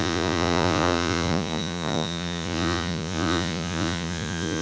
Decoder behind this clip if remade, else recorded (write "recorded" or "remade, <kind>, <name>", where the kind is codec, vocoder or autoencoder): remade, vocoder, Vocos